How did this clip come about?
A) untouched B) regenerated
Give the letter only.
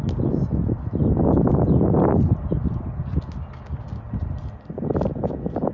A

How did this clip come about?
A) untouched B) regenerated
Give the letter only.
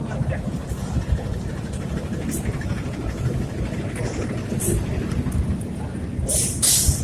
A